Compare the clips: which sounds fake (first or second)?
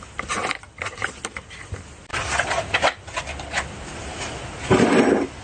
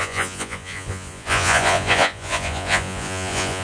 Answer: second